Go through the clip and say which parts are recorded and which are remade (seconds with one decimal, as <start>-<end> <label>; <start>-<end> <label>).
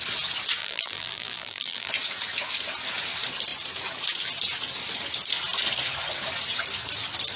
0.0-0.6 recorded; 0.6-1.9 remade; 1.9-7.4 recorded